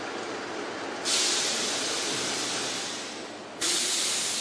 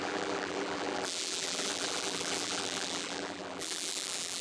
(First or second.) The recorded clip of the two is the first